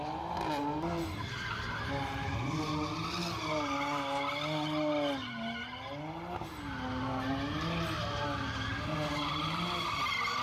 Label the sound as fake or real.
real